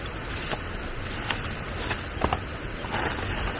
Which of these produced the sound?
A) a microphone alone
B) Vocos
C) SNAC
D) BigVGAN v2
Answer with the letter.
A